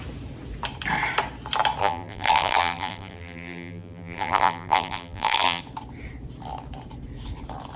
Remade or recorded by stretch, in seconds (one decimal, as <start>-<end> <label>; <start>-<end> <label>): 0.0-1.8 recorded; 1.8-5.6 remade; 5.6-7.8 recorded